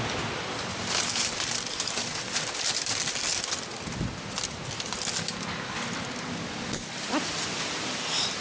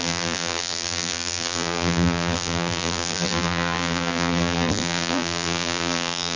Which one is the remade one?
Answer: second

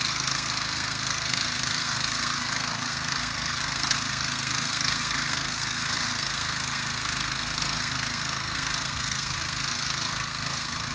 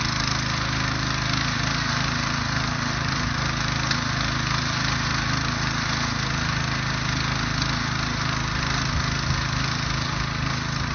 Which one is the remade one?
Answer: first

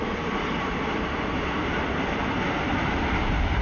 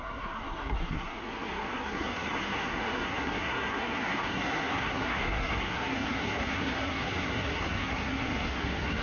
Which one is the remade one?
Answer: second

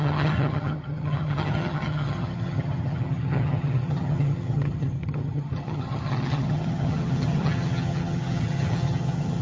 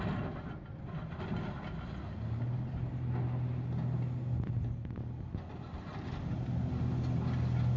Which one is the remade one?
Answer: first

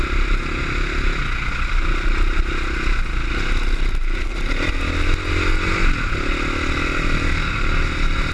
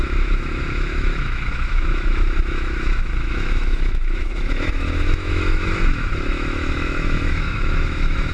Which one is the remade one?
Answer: second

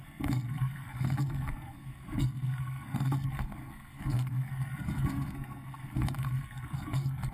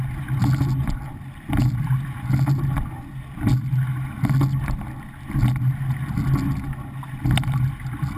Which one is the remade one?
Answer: first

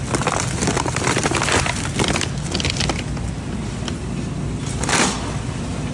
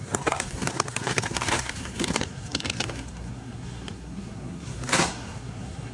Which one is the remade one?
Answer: second